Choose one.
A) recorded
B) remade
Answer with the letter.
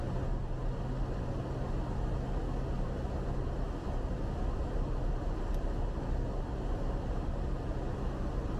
A